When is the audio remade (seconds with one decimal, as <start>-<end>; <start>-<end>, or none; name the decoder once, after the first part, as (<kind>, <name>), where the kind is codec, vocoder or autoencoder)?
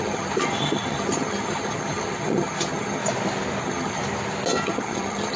0.0-3.0 (vocoder, HiFi-GAN); 3.6-4.0; 4.6-5.4